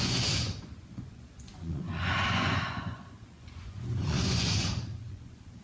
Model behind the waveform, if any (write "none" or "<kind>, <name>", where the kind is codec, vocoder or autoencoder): vocoder, Vocos